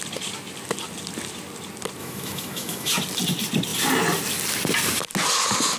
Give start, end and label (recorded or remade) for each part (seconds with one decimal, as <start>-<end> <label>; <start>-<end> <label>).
0.0-2.0 recorded; 2.0-2.9 remade; 2.9-5.8 recorded